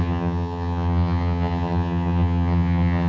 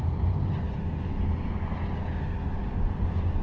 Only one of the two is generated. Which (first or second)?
first